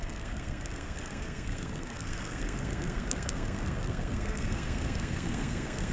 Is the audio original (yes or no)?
no